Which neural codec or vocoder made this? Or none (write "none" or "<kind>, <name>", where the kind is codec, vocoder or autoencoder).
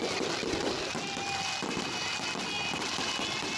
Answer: none